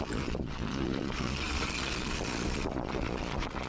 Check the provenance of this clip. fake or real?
fake